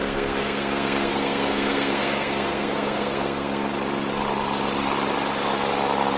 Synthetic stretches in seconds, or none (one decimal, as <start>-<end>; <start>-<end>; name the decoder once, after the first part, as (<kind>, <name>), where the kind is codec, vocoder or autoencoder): 0.0-3.7 (codec, SNAC)